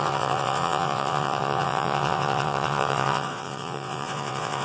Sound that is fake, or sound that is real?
fake